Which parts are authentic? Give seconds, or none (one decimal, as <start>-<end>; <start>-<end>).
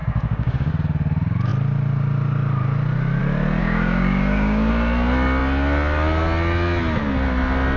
0.7-3.6; 4.7-7.8